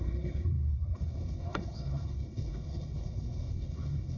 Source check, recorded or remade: remade